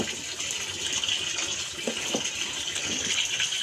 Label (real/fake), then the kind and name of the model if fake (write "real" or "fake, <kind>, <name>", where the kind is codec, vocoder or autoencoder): real